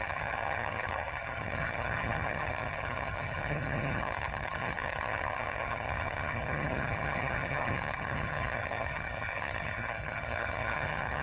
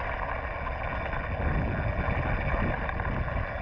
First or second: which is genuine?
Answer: second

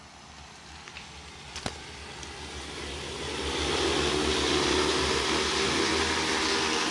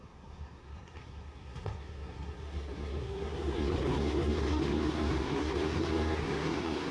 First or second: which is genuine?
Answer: first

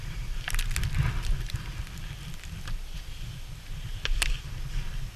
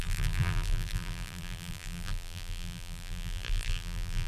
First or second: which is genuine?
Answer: first